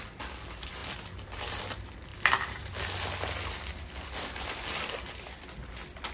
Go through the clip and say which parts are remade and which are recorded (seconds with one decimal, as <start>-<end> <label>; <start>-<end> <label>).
0.0-6.1 recorded